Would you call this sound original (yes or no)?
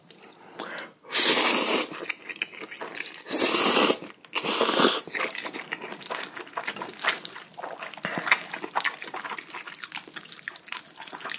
yes